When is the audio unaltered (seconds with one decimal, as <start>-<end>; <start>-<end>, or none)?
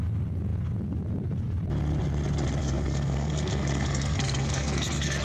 0.0-2.6